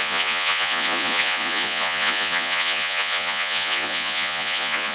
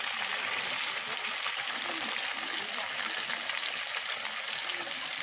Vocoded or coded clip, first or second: first